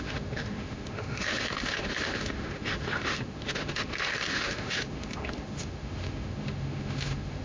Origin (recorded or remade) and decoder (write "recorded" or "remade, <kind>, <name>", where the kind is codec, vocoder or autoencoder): remade, autoencoder, DAC-VAE